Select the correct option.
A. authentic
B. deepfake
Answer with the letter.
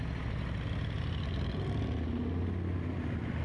A